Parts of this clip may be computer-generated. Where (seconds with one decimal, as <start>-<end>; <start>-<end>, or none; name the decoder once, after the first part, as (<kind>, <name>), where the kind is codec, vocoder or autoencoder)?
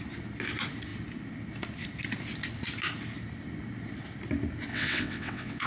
4.7-5.7 (vocoder, WaveNeXt)